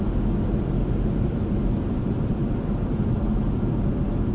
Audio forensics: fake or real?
real